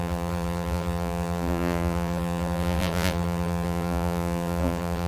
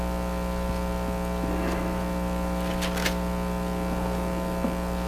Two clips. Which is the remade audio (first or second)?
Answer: first